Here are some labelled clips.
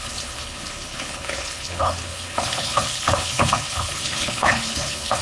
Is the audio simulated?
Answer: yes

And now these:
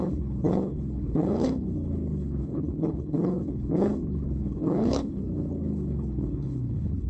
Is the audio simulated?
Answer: yes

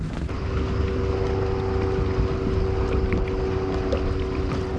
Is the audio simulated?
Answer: no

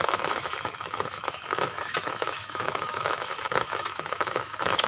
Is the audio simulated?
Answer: yes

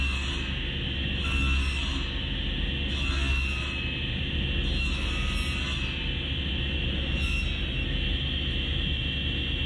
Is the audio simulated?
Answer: no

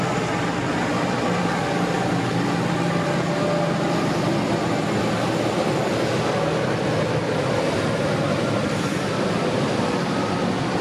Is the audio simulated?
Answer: no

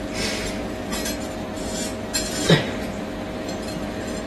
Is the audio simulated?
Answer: no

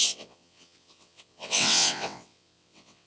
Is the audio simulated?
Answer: yes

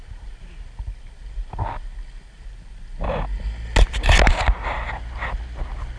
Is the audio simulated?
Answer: no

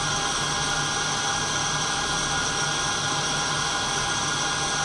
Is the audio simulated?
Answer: no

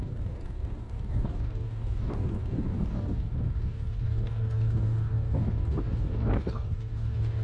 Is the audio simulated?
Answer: yes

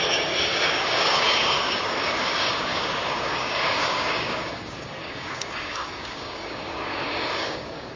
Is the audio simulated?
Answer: yes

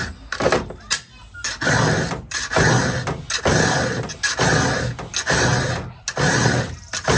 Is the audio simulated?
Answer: no